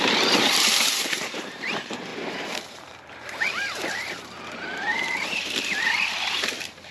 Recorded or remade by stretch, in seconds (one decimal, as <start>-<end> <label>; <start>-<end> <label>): 0.0-6.9 remade

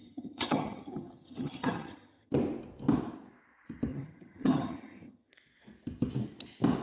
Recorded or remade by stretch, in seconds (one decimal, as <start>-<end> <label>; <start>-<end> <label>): 0.0-2.3 remade; 2.3-3.9 recorded; 3.9-5.3 remade; 5.3-6.8 recorded